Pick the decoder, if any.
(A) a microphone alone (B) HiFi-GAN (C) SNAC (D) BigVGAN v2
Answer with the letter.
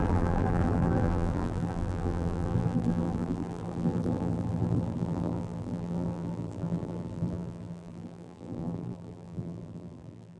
D